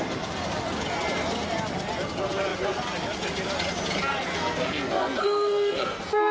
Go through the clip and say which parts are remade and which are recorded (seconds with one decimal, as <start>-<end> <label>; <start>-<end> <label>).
0.0-4.3 recorded; 4.3-6.3 remade

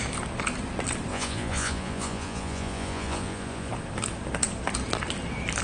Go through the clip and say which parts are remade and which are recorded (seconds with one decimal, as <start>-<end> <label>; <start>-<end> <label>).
0.0-1.1 recorded; 1.1-3.7 remade; 3.7-5.6 recorded

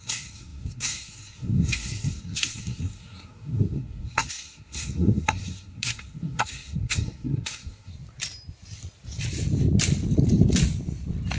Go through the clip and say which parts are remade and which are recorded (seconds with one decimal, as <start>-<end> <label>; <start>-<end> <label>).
0.0-7.9 remade; 7.9-11.4 recorded

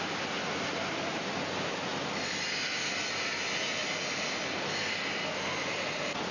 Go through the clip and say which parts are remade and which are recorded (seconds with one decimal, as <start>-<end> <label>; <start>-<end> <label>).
0.0-6.3 recorded

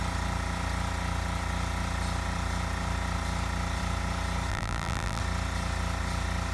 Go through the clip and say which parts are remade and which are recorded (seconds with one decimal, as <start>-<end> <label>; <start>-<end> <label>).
0.0-4.5 recorded; 4.5-5.2 remade; 5.2-6.5 recorded

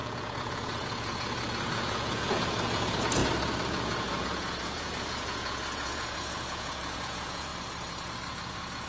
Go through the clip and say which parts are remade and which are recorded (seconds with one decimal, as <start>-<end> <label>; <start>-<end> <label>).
0.0-3.2 remade; 3.2-3.7 recorded; 3.7-7.5 remade; 7.5-8.3 recorded; 8.3-8.9 remade

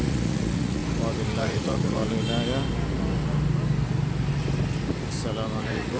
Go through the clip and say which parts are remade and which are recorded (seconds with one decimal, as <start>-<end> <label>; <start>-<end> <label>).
0.0-0.8 remade; 0.8-1.4 recorded; 1.4-2.0 remade; 2.0-5.6 recorded; 5.6-6.0 remade